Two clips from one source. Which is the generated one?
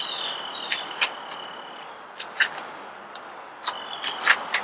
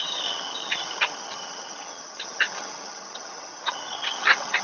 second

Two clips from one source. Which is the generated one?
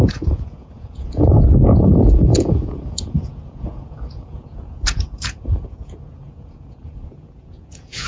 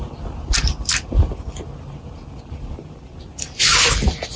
first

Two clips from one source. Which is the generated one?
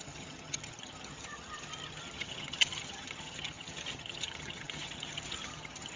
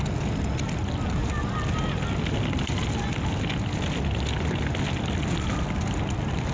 first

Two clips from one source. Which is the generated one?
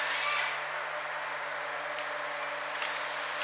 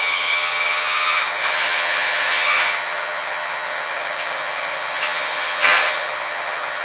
second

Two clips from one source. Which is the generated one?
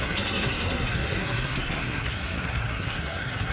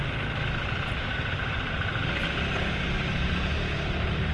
first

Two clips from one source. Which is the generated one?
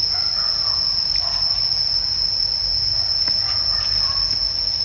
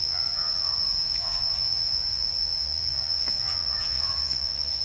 second